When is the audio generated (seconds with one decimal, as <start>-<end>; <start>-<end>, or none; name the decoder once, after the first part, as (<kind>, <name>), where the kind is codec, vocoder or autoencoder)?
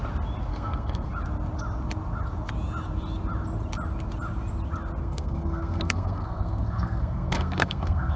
0.5-1.1 (codec, SNAC); 5.0-8.2